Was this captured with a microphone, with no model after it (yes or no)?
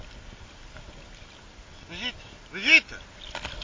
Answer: yes